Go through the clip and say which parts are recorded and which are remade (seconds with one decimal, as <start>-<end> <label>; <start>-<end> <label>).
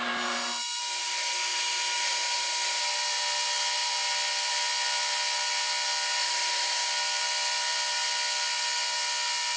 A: 0.0-0.8 recorded; 0.8-2.8 remade; 2.8-6.2 recorded; 6.2-6.9 remade; 6.9-9.6 recorded